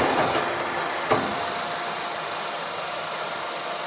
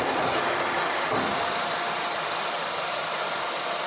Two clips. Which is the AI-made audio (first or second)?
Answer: second